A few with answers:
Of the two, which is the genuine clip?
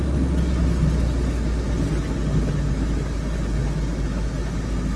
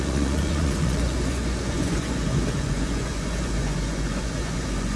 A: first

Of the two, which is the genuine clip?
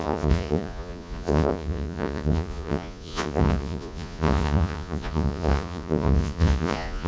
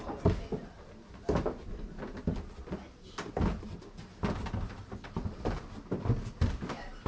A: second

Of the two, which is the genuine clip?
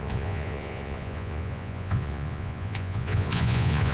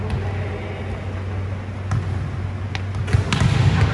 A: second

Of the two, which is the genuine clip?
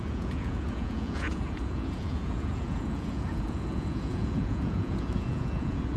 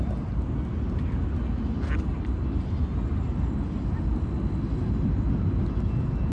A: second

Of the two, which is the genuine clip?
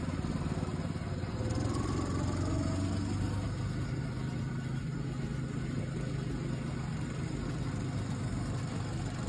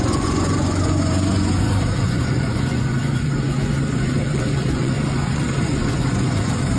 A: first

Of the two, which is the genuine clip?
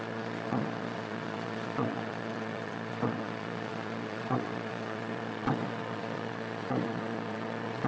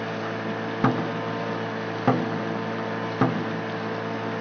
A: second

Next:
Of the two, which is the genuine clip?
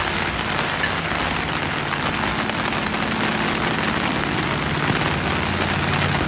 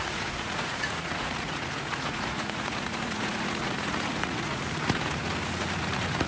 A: first